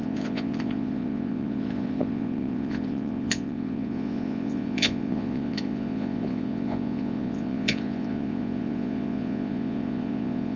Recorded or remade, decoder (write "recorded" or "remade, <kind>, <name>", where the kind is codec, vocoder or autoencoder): remade, vocoder, Vocos